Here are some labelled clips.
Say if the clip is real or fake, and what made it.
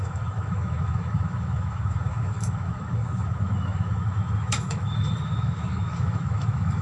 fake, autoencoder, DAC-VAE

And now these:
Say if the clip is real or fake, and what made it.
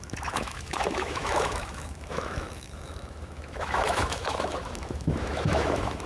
fake, autoencoder, DAC-VAE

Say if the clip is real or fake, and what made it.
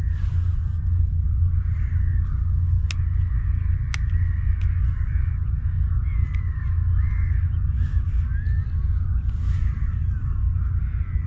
real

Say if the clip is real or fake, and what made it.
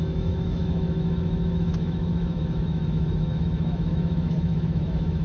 fake, autoencoder, DAC-VAE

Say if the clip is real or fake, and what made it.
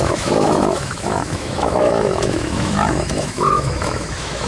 fake, autoencoder, DAC-VAE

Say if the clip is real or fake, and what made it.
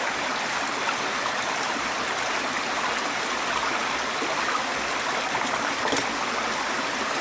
real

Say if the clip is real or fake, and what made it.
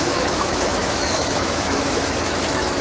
fake, autoencoder, DAC-VAE